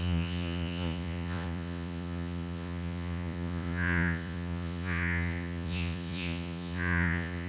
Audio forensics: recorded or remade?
remade